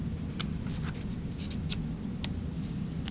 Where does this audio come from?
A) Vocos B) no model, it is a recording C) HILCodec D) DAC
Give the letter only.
B